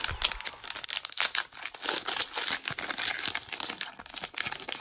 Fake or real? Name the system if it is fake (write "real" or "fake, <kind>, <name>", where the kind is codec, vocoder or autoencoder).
real